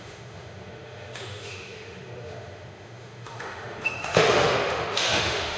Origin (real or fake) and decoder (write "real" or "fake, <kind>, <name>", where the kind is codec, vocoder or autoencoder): fake, autoencoder, DAC-VAE